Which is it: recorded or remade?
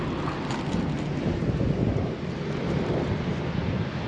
recorded